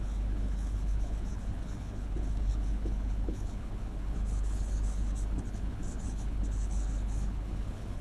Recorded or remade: remade